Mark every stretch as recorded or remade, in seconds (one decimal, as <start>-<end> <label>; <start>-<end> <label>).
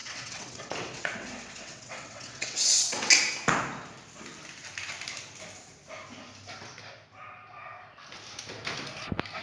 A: 0.0-3.1 remade; 3.1-9.4 recorded